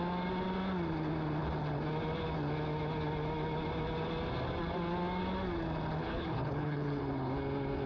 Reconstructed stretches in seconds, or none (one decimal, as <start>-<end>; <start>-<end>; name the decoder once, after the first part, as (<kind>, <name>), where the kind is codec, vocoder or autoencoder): 6.0-7.0 (codec, HILCodec)